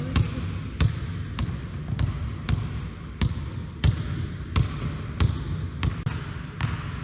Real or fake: real